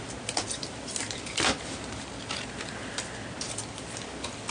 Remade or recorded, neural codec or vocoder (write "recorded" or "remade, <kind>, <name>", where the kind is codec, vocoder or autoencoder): recorded